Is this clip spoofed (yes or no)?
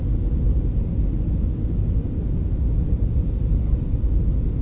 no